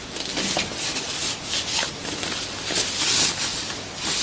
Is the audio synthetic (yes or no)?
no